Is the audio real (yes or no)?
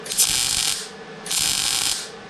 yes